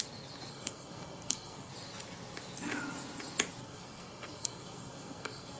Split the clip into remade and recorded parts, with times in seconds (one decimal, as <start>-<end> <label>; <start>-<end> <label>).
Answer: 0.0-0.5 recorded; 0.5-1.7 remade; 1.7-3.6 recorded; 3.6-5.6 remade